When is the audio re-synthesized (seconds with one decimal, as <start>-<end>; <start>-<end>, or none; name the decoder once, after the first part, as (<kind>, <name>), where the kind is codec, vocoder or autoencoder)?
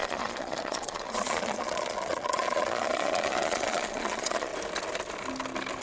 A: 0.0-4.5 (vocoder, Vocos)